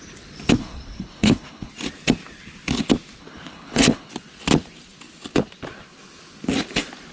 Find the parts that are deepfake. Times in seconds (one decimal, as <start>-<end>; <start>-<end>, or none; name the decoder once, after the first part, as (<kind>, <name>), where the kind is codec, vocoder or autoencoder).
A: 0.6-1.7 (codec, HILCodec); 3.2-4.1